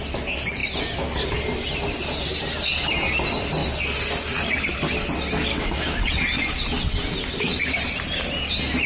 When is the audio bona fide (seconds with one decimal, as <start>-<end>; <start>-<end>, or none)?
0.0-5.5; 6.0-8.9